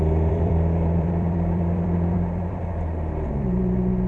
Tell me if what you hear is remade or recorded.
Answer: remade